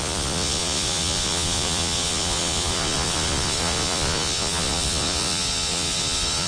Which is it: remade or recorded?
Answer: remade